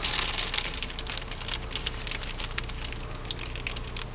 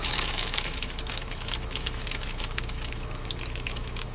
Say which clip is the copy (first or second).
second